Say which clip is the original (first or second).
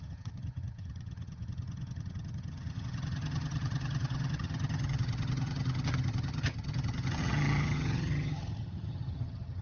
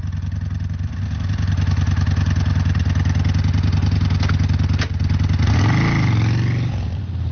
second